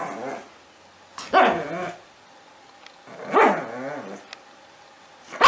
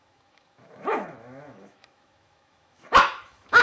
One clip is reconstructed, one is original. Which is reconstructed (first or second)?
second